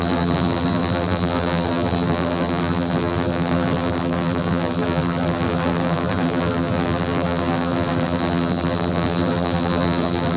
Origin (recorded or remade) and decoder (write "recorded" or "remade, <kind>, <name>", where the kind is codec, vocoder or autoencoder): remade, vocoder, BigVGAN v2